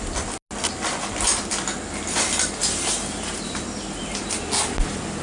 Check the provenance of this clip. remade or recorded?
recorded